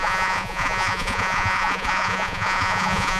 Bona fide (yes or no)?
no